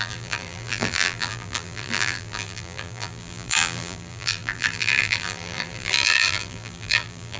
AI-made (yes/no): yes